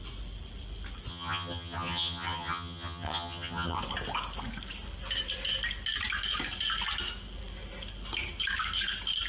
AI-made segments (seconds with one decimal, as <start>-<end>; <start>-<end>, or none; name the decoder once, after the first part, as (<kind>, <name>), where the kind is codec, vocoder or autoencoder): 1.1-3.8 (vocoder, HiFi-GAN)